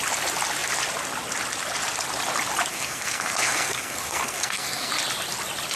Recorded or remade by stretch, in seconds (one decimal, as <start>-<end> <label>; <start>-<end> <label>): 0.0-2.7 recorded; 2.7-4.9 remade; 4.9-5.8 recorded